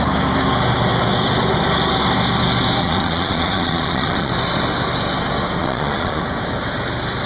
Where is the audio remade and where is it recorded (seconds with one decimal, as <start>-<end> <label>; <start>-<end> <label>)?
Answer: 0.0-2.8 recorded; 2.8-4.3 remade; 4.3-5.6 recorded; 5.6-6.2 remade; 6.2-7.3 recorded

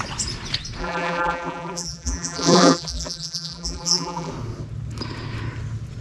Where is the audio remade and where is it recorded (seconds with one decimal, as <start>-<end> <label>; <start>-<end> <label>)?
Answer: 0.0-0.8 recorded; 0.8-4.3 remade; 4.3-6.0 recorded

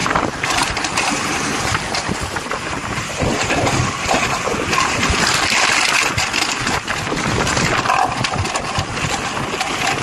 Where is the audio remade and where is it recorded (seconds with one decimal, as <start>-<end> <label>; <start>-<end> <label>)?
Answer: 0.0-5.2 remade; 5.2-10.0 recorded

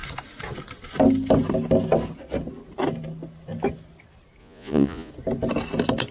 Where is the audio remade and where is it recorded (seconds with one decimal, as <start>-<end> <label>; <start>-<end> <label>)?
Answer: 0.0-4.4 recorded; 4.4-5.1 remade; 5.1-6.1 recorded